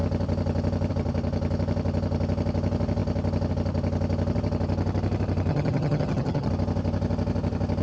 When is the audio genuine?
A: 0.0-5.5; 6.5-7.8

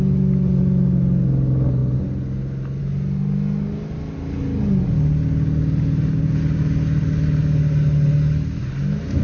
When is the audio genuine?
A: 0.0-9.2

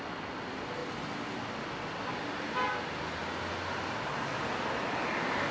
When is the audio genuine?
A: 0.0-5.5

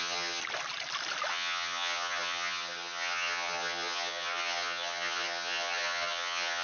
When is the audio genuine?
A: 0.4-1.3

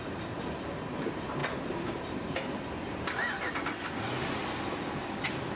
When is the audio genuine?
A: 0.0-5.6

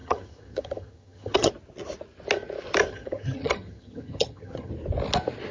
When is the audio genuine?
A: 1.5-2.9; 4.7-5.5

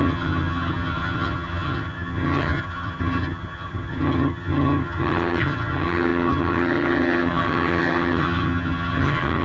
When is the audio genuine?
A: none